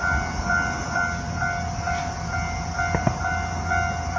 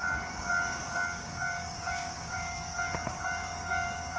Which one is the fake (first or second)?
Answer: second